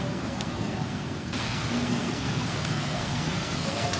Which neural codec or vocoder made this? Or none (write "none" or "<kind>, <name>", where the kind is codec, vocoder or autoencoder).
codec, SNAC